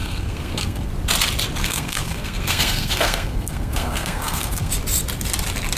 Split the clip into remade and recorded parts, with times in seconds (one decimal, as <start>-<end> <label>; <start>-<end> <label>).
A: 0.0-0.9 remade; 0.9-1.6 recorded; 1.6-4.7 remade; 4.7-5.8 recorded